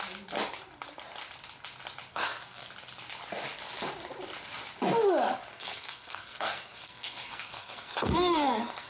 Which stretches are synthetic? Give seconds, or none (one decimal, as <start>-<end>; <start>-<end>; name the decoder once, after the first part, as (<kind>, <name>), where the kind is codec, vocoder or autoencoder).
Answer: 2.1-2.7 (codec, SNAC); 5.5-8.9